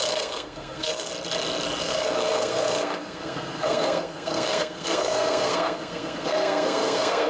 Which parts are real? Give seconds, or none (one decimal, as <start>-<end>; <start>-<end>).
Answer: 1.1-1.8